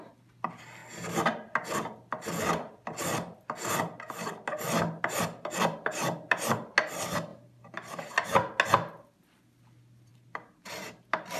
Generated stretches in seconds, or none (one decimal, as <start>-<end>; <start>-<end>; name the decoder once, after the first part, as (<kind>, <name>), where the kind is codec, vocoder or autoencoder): 7.3-8.1 (vocoder, BigVGAN v2); 10.1-10.6